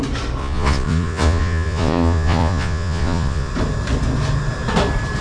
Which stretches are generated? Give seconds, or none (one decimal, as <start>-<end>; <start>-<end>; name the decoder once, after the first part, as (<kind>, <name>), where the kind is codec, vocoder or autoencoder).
0.4-3.5 (vocoder, Vocos)